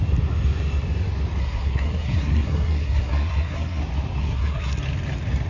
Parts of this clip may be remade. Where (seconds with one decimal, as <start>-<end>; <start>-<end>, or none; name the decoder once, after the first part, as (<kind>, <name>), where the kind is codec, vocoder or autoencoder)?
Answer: 1.4-3.8 (codec, SNAC); 4.2-4.8